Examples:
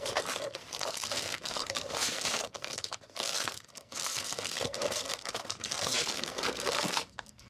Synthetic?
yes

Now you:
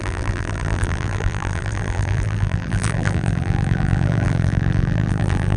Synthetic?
yes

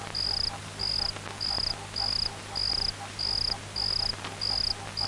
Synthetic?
no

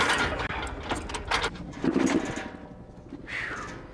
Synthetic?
no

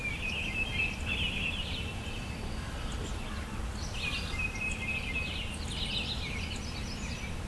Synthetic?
no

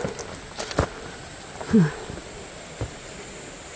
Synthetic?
no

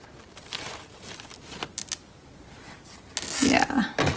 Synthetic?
no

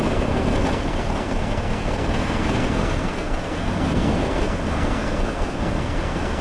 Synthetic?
yes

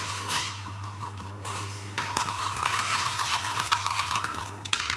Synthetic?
yes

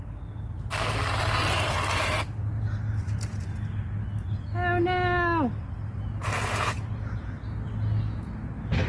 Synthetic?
no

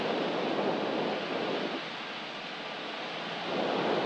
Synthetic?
no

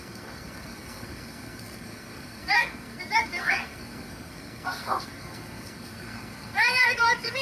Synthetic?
yes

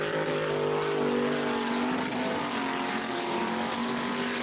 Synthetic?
no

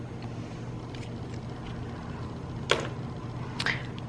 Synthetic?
no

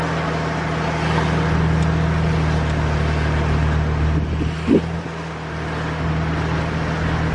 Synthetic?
no